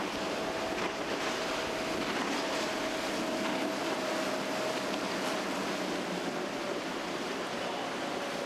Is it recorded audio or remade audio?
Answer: recorded